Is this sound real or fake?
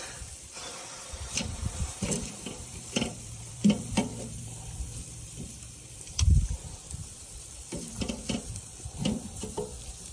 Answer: fake